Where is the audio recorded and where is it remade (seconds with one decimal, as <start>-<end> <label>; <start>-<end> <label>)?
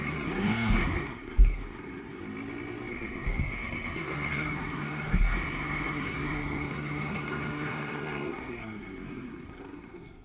0.0-2.2 remade; 2.2-2.9 recorded; 2.9-10.2 remade